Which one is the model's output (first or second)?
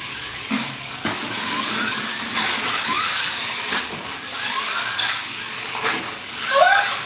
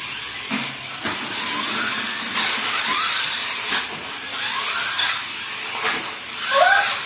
first